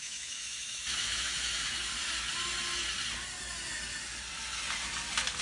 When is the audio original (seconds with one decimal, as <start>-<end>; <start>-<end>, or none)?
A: 1.9-5.4